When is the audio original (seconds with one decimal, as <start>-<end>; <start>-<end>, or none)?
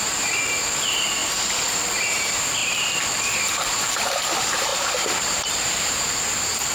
1.2-2.1